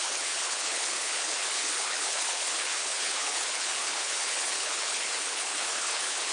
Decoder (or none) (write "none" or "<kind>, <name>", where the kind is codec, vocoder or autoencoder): codec, HILCodec